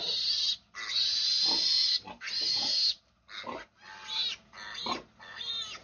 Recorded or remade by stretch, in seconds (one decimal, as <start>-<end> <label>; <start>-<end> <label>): 0.0-5.8 recorded